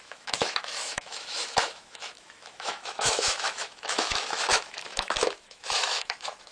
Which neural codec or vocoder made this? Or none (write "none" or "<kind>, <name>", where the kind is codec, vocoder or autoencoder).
autoencoder, DAC-VAE